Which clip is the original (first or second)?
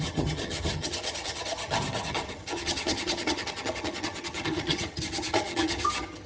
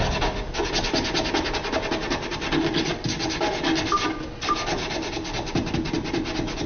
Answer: second